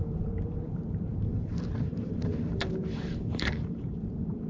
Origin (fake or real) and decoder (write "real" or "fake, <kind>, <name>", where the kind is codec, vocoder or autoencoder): fake, vocoder, BigVGAN v2